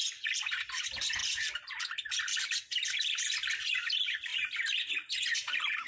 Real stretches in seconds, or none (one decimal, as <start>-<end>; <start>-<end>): 1.2-1.8; 4.3-4.9